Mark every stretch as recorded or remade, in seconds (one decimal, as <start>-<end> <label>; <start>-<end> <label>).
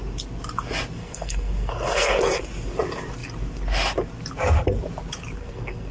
0.0-1.0 recorded; 1.0-2.4 remade; 2.4-5.4 recorded; 5.4-5.9 remade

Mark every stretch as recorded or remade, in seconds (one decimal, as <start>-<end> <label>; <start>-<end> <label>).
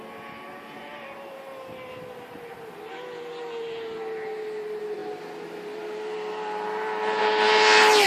0.0-8.1 recorded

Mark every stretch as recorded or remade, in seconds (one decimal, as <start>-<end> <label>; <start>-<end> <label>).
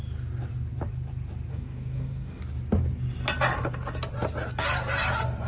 0.0-1.5 recorded; 1.5-2.4 remade; 2.4-5.5 recorded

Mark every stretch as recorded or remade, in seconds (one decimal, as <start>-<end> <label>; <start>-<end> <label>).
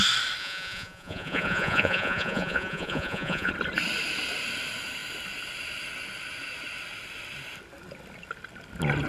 0.0-0.4 recorded; 0.4-3.5 remade; 3.5-9.1 recorded